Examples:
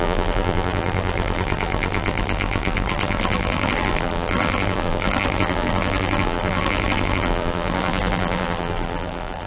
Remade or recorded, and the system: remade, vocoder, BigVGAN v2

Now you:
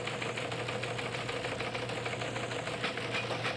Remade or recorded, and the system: recorded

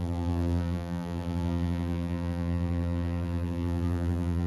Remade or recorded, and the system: remade, vocoder, BigVGAN v2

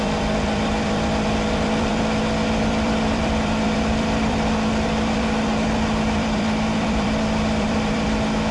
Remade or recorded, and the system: remade, vocoder, BigVGAN v2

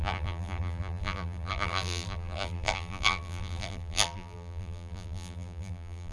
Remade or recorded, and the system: remade, vocoder, BigVGAN v2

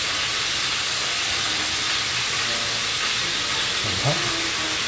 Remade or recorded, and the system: recorded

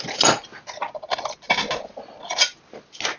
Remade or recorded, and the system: recorded